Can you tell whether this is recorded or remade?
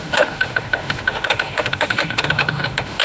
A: remade